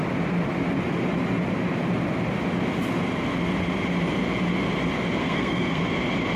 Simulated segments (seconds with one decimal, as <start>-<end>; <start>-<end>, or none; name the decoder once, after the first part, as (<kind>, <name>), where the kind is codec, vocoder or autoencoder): 5.2-5.8 (codec, SNAC)